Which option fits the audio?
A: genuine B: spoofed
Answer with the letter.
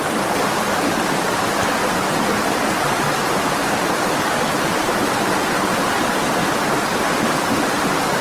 A